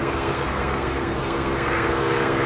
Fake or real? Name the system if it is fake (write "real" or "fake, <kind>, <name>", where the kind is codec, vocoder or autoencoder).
fake, codec, SNAC